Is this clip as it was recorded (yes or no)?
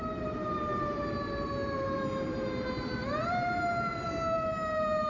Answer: no